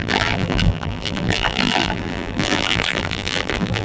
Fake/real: fake